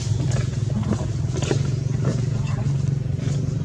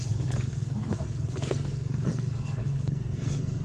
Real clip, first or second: first